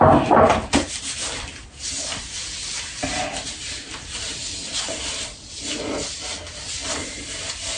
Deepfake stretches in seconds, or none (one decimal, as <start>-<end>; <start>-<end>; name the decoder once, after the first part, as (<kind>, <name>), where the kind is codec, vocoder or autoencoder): 6.8-7.3 (vocoder, BigVGAN v2)